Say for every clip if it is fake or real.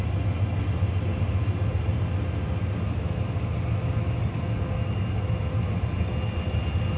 real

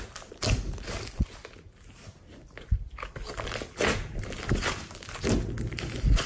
real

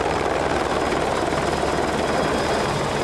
real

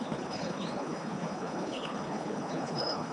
fake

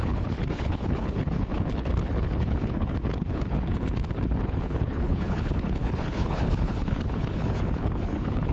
fake